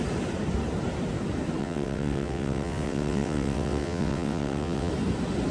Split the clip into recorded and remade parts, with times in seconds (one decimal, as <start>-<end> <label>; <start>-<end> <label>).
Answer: 0.0-1.6 recorded; 1.6-4.9 remade; 4.9-5.5 recorded